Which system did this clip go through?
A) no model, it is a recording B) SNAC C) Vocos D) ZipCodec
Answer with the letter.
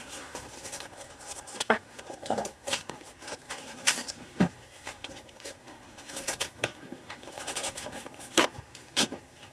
B